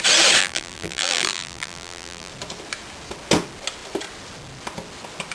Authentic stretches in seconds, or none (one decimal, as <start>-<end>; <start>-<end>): 0.0-0.4; 2.3-5.3